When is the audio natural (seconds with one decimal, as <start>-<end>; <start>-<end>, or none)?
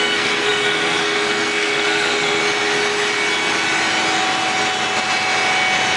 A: 2.4-6.0